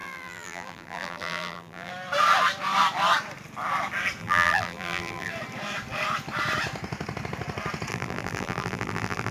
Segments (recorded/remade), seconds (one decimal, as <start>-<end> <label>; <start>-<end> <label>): 0.0-1.9 remade; 1.9-4.2 recorded; 4.2-5.3 remade; 5.3-7.9 recorded; 7.9-9.3 remade